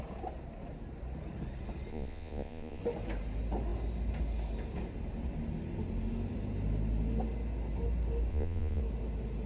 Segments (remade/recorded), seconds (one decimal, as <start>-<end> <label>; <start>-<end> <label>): 0.0-1.9 recorded; 1.9-2.8 remade; 2.8-8.3 recorded; 8.3-8.8 remade; 8.8-9.5 recorded